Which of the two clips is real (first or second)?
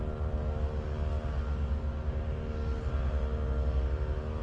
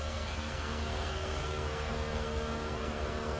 first